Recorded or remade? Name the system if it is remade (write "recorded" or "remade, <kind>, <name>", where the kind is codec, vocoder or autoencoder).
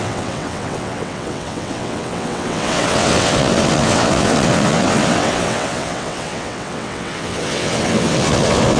remade, vocoder, WaveNeXt